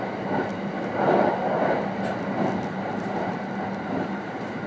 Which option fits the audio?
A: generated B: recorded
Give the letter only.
B